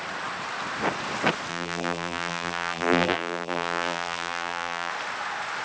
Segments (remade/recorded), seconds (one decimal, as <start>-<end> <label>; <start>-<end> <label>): 0.0-1.5 recorded; 1.5-4.9 remade; 4.9-5.6 recorded